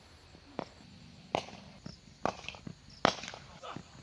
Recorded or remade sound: recorded